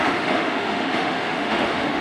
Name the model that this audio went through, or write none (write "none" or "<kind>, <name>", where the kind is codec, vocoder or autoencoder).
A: autoencoder, DAC-VAE